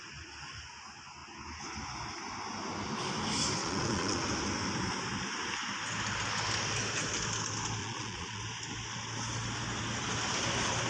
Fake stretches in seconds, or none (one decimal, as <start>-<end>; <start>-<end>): 3.6-4.2; 7.8-8.4